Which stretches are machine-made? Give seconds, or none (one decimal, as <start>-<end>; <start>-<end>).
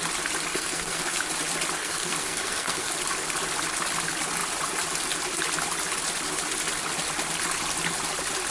0.5-1.2; 1.8-2.9